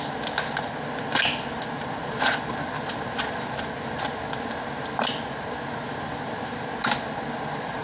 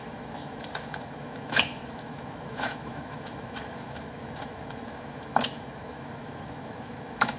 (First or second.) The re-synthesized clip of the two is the second